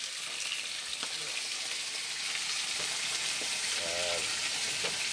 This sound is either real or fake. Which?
real